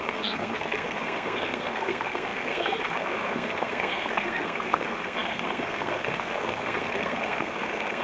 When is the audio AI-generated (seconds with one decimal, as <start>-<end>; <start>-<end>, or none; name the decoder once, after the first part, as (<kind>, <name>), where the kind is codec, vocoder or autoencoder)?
0.0-8.0 (codec, SNAC)